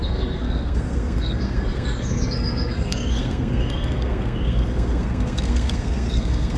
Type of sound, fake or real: fake